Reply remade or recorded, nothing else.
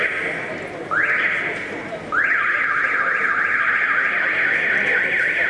recorded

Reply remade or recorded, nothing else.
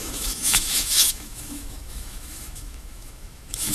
remade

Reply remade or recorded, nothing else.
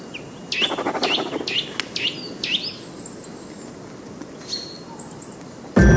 recorded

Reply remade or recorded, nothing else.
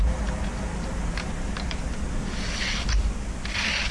recorded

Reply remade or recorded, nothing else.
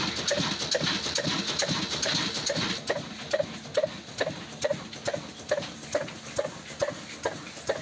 recorded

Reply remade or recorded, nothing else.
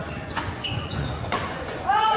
remade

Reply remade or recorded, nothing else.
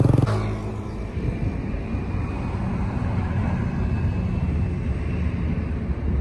recorded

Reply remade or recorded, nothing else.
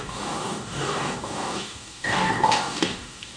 remade